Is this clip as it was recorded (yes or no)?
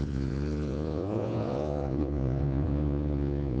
no